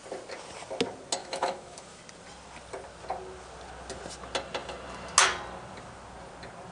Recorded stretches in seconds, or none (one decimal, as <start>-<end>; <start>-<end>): 0.0-1.2; 2.0-6.7